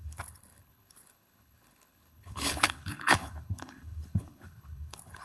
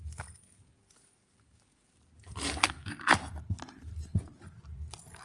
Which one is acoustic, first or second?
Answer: second